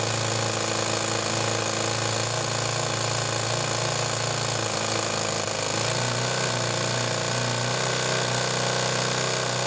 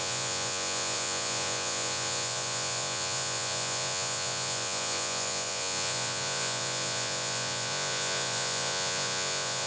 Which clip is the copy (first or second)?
second